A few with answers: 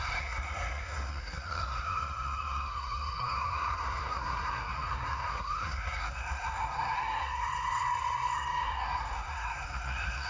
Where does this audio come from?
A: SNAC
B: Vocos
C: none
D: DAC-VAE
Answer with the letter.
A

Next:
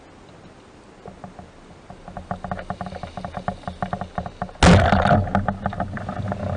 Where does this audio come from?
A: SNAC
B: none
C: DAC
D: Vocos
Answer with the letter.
B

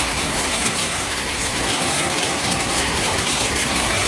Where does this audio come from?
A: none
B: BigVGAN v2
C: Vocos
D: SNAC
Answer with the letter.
D